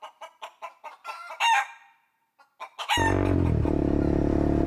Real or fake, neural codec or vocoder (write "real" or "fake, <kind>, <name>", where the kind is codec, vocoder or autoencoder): real